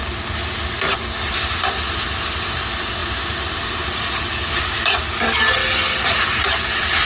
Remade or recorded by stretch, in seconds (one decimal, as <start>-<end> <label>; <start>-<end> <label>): 0.0-7.0 recorded